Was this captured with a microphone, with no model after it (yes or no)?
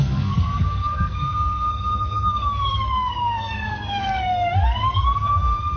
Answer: no